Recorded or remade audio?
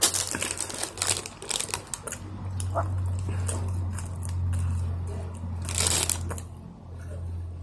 recorded